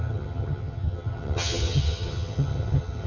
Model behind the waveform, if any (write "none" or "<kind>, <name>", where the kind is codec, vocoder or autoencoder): vocoder, HiFi-GAN